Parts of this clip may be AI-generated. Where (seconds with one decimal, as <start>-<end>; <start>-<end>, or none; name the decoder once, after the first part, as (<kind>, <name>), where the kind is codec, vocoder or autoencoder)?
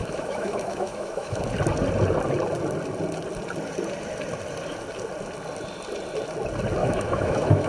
0.0-1.4 (autoencoder, DAC-VAE); 6.8-7.7